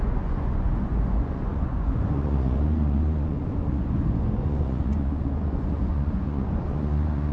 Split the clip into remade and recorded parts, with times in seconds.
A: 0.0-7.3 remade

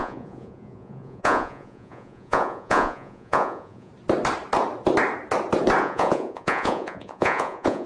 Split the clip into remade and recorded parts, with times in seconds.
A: 0.0-3.9 remade; 3.9-5.8 recorded; 5.8-7.9 remade